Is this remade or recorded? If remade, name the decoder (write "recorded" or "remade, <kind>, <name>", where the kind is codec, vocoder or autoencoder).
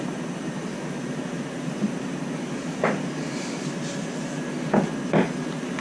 recorded